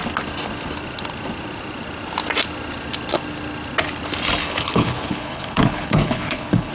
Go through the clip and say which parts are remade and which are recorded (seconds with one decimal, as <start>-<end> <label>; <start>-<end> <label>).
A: 0.0-4.4 recorded; 4.4-6.7 remade